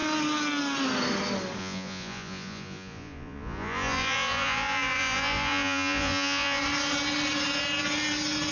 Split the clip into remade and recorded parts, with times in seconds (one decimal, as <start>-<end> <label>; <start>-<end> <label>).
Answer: 0.0-1.6 recorded; 1.6-6.6 remade; 6.6-8.5 recorded